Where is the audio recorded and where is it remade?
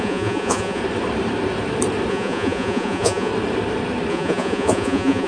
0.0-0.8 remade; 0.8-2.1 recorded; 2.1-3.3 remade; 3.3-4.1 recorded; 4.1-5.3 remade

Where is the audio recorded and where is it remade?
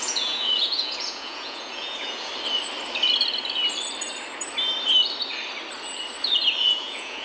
0.0-2.3 remade; 2.3-6.6 recorded; 6.6-7.2 remade